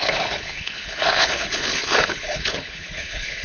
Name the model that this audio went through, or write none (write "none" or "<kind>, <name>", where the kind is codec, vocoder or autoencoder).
codec, HILCodec